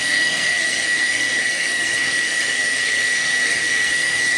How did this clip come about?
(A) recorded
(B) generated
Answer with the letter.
B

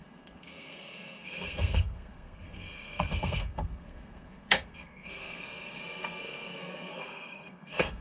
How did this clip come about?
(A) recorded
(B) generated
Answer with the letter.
B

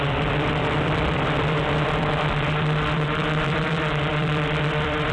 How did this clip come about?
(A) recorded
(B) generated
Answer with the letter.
B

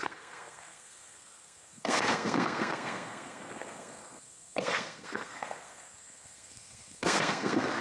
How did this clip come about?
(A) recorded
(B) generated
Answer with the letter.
B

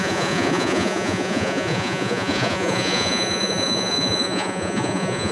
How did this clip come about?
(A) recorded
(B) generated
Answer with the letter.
B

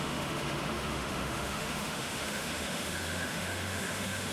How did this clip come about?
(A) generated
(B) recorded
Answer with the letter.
A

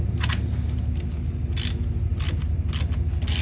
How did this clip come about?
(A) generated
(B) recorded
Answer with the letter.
B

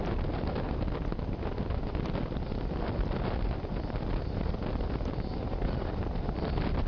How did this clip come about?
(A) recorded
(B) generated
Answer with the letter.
A